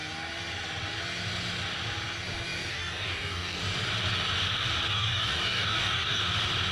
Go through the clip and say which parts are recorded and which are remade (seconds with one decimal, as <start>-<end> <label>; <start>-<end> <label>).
0.0-2.7 recorded; 2.7-3.6 remade; 3.6-4.9 recorded; 4.9-6.2 remade; 6.2-6.7 recorded